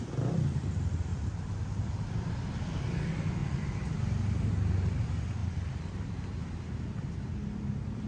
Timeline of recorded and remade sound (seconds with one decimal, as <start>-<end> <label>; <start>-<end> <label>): 0.0-1.1 recorded; 1.1-2.1 remade; 2.1-3.4 recorded; 3.4-4.5 remade; 4.5-5.4 recorded; 5.4-6.4 remade; 6.4-8.1 recorded